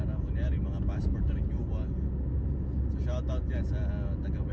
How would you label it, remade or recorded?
recorded